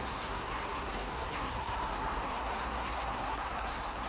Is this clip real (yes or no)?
no